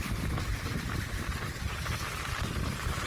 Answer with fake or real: real